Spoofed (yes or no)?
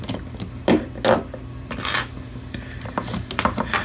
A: no